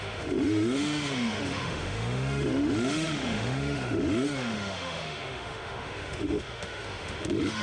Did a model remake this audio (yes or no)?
yes